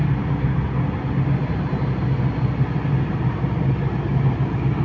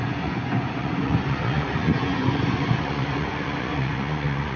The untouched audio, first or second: first